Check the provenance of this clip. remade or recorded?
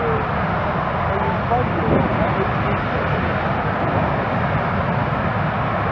recorded